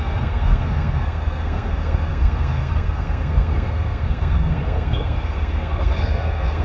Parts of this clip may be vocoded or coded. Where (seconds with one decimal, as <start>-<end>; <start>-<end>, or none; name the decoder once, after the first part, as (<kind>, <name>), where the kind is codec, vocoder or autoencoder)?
0.0-6.6 (codec, SNAC)